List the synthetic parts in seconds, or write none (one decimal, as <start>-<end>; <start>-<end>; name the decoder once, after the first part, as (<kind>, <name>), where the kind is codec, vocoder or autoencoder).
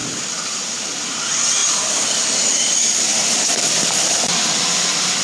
3.1-4.1 (vocoder, BigVGAN v2)